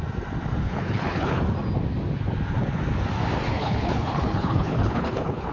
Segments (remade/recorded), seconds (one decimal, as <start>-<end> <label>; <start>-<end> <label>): 0.0-0.6 recorded; 0.6-1.4 remade; 1.4-3.5 recorded; 3.5-5.5 remade